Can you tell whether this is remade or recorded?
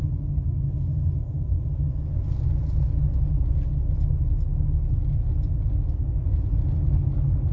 recorded